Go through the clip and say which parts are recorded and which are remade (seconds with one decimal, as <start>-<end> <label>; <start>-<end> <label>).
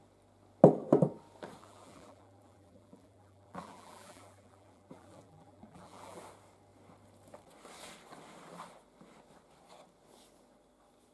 0.0-1.6 recorded; 1.6-6.2 remade; 6.2-11.1 recorded